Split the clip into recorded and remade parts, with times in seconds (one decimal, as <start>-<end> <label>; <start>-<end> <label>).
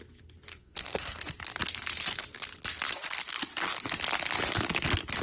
0.0-0.5 recorded; 0.5-1.2 remade; 1.2-5.2 recorded